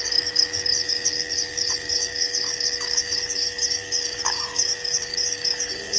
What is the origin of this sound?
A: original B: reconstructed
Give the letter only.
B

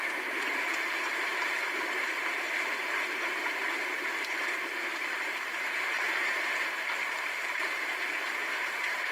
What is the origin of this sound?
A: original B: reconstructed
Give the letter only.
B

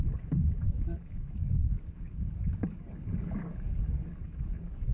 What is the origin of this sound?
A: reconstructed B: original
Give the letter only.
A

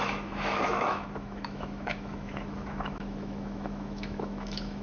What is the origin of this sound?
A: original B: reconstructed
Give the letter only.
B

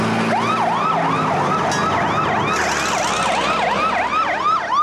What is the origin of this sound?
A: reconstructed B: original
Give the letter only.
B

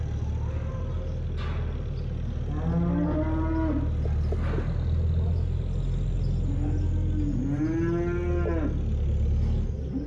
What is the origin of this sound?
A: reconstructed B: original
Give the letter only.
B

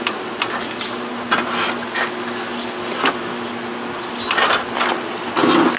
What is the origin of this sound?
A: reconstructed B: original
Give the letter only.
B